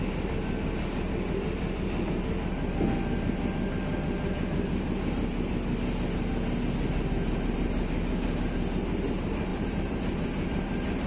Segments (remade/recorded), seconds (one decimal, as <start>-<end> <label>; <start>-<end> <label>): 0.0-9.5 recorded; 9.5-10.0 remade; 10.0-11.1 recorded